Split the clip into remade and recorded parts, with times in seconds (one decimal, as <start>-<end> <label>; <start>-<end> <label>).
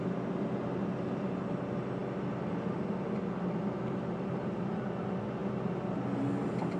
0.0-6.8 recorded